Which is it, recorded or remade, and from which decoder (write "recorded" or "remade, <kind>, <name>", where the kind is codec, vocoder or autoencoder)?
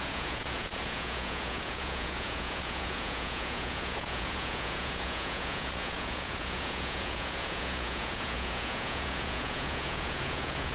remade, vocoder, Vocos